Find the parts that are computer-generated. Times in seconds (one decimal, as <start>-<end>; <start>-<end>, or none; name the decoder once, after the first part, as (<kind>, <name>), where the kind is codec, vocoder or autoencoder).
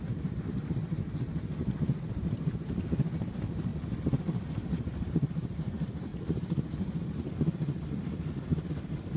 0.0-1.5 (vocoder, BigVGAN v2); 2.1-3.7; 5.0-9.2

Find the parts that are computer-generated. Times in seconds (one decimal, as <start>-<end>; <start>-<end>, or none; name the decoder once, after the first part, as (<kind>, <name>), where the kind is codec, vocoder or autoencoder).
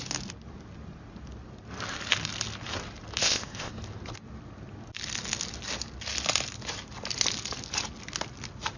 3.2-3.7 (codec, ZipCodec)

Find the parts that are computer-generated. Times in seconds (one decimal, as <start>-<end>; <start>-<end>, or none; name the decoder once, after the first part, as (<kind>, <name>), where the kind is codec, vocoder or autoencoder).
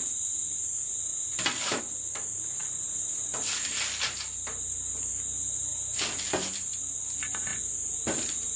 1.1-1.8 (vocoder, BigVGAN v2); 2.6-3.8; 5.7-6.8; 7.5-8.6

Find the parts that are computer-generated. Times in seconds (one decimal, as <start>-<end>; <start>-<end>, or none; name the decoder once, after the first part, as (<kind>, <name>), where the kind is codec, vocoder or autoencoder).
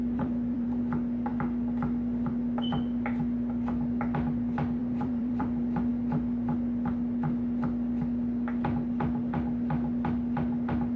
0.0-0.8 (vocoder, BigVGAN v2); 4.8-5.9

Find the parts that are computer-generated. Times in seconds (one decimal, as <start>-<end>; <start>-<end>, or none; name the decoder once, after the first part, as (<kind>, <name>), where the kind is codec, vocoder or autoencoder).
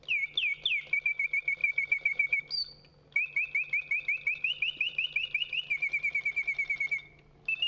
1.6-2.4 (vocoder, BigVGAN v2)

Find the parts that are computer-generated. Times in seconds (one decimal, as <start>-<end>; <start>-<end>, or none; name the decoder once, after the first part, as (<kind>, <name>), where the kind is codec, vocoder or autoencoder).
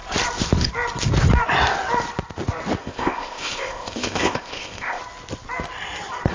2.8-5.0 (codec, ZipCodec)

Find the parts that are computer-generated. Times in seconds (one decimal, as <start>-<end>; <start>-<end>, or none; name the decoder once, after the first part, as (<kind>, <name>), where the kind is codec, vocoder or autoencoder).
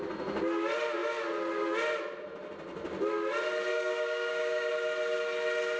3.7-4.7 (codec, DAC)